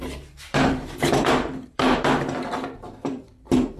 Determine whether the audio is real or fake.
fake